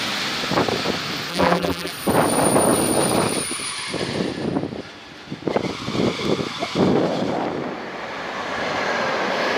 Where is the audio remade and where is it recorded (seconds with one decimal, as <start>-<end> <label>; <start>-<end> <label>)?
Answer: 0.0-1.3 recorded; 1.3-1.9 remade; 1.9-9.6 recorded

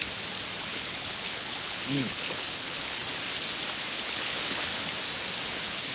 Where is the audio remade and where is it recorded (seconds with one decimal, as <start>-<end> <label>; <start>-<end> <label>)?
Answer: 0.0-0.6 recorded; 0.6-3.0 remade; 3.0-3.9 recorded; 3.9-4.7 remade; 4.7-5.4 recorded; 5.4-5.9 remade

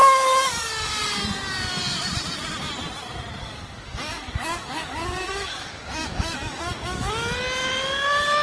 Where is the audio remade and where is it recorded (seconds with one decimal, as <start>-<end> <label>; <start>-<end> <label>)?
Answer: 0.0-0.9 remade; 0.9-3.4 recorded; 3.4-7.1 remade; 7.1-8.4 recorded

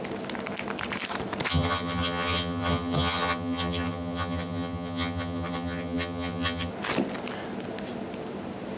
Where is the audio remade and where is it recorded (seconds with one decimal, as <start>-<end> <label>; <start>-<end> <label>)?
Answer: 0.0-1.5 recorded; 1.5-6.7 remade; 6.7-8.8 recorded

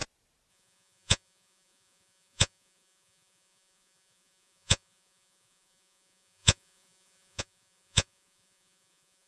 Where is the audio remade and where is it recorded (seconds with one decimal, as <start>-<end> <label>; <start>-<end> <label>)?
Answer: 0.0-0.5 recorded; 0.5-9.3 remade

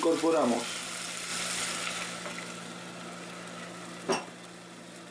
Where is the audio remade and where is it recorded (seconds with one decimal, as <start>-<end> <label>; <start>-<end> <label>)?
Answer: 0.0-5.1 recorded

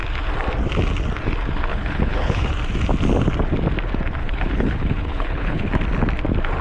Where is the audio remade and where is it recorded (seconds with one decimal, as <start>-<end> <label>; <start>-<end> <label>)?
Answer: 0.0-1.7 recorded; 1.7-2.5 remade; 2.5-4.2 recorded; 4.2-5.7 remade; 5.7-6.6 recorded